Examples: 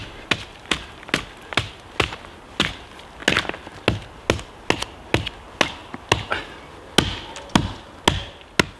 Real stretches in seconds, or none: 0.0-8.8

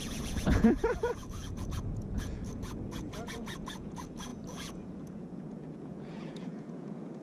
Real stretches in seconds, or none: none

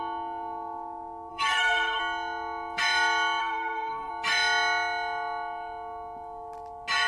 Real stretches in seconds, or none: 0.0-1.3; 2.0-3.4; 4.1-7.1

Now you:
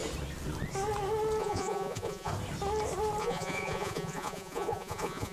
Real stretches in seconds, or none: 0.0-1.4; 2.3-3.2